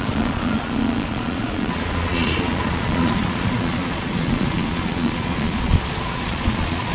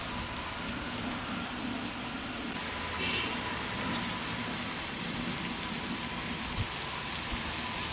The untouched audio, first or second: second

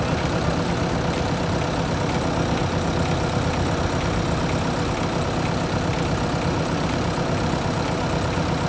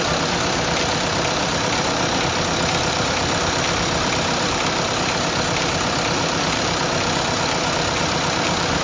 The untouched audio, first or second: first